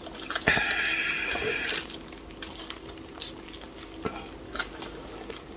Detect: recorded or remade recorded